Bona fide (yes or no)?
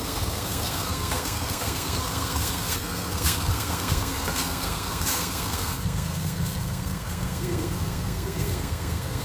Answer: no